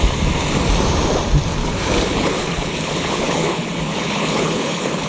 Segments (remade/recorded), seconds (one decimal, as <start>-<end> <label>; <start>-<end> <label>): 0.0-1.6 recorded; 1.6-5.1 remade